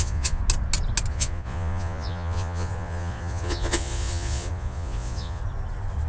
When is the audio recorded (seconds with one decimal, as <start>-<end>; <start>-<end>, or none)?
0.4-1.1; 5.4-6.1